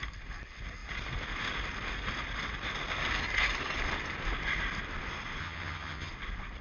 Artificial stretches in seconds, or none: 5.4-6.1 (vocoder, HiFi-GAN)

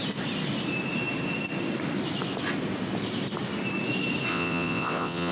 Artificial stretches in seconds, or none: 4.3-5.3 (vocoder, WaveNeXt)

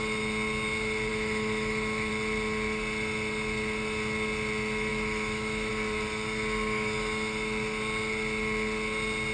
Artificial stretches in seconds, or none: 1.1-2.1 (autoencoder, DAC-VAE); 4.9-5.7

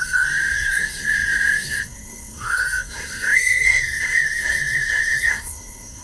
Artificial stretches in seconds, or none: 0.0-6.0 (codec, SNAC)

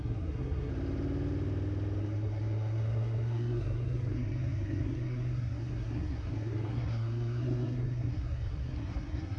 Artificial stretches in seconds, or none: 0.0-0.7 (codec, SNAC); 2.0-9.4

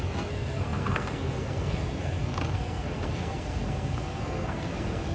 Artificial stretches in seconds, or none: 0.0-5.1 (codec, SNAC)

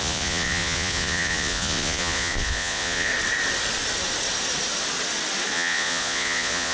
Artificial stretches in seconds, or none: 0.0-3.1 (vocoder, Vocos); 5.5-6.7